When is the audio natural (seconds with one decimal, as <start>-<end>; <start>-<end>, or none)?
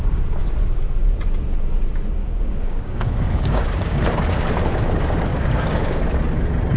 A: 0.0-2.2; 4.0-5.3; 6.0-6.8